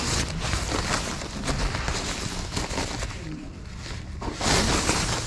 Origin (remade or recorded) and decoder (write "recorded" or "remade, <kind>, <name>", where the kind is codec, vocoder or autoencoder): recorded